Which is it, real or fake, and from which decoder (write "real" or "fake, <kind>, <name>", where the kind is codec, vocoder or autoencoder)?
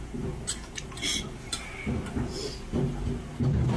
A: real